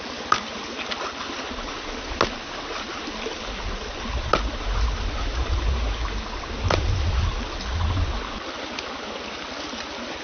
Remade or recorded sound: recorded